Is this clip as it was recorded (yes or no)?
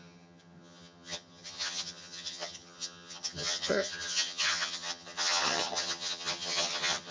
no